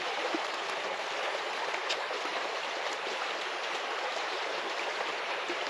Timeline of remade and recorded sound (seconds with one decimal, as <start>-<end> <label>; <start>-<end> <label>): 0.0-2.3 recorded; 2.3-5.1 remade; 5.1-5.7 recorded